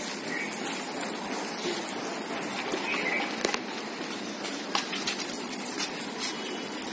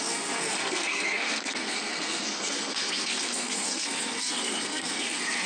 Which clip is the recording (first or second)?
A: first